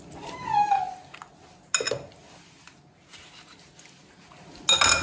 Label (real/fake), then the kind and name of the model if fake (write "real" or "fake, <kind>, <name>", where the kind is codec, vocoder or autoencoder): real